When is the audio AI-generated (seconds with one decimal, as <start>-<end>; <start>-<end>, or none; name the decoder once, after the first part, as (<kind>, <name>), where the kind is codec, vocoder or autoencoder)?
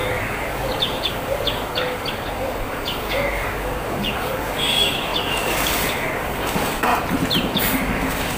0.0-6.9 (codec, DAC); 7.4-8.4